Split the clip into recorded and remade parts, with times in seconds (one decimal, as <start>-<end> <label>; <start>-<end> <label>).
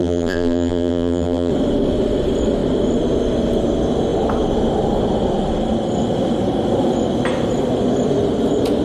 0.0-1.5 remade; 1.5-8.8 recorded